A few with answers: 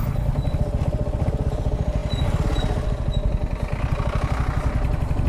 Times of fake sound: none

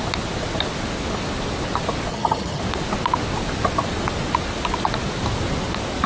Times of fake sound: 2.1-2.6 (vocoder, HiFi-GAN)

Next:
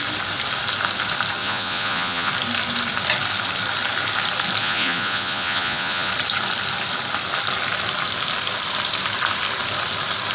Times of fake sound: 1.4-2.3 (vocoder, Vocos); 4.6-6.1